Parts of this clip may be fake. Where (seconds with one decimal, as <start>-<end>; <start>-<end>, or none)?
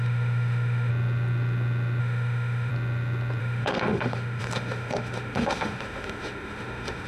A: 0.0-0.9; 2.0-2.7; 3.4-7.1